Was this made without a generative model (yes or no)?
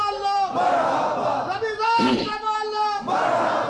no